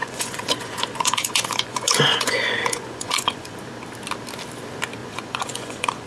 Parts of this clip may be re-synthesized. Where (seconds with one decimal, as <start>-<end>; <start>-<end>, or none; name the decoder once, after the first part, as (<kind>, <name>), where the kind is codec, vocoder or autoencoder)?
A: 0.0-3.6 (vocoder, Vocos); 5.0-6.1